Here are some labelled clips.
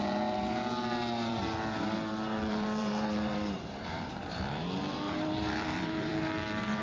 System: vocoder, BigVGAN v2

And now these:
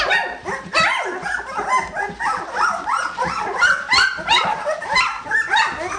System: none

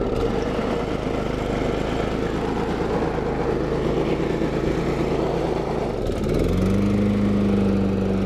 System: none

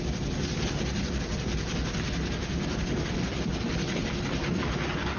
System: none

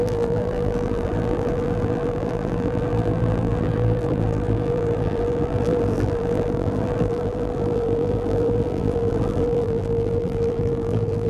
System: vocoder, BigVGAN v2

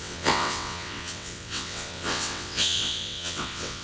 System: vocoder, WaveNeXt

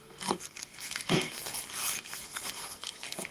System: codec, SNAC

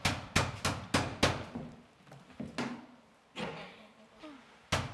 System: none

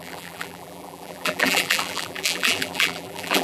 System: vocoder, BigVGAN v2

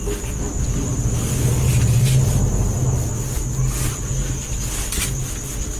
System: none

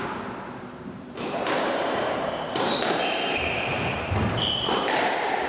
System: vocoder, BigVGAN v2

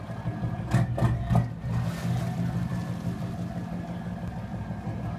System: none